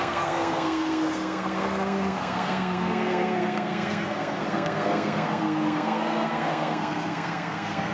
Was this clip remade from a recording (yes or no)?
yes